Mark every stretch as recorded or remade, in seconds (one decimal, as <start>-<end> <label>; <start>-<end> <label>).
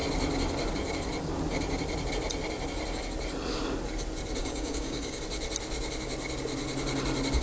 0.0-4.4 recorded; 4.4-5.2 remade; 5.2-7.4 recorded